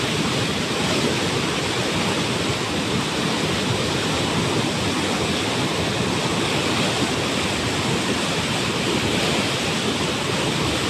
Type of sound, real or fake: real